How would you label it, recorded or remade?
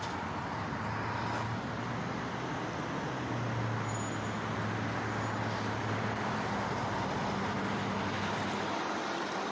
recorded